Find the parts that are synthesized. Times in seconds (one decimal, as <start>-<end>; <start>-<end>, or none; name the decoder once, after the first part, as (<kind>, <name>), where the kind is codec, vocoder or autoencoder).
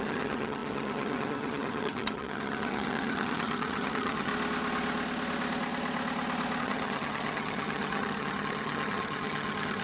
0.0-4.3 (vocoder, HiFi-GAN); 6.6-9.8